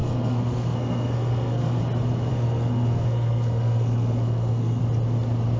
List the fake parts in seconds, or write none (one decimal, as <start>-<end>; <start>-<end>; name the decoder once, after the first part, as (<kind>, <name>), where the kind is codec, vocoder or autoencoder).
0.0-1.8 (codec, SNAC); 2.3-4.8